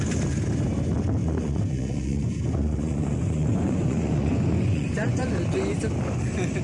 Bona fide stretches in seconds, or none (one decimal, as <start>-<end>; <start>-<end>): 0.0-1.2; 5.2-6.6